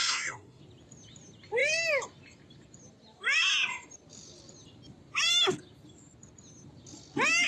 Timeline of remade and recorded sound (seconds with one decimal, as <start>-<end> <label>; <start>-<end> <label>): 0.0-0.6 remade; 0.6-7.5 recorded